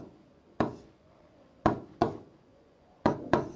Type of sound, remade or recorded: remade